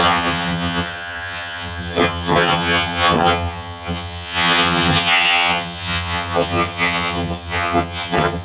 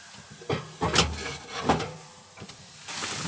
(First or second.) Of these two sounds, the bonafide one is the second